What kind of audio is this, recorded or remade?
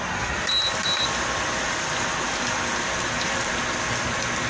recorded